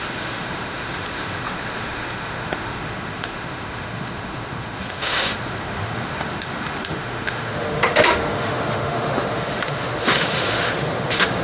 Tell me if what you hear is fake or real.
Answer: fake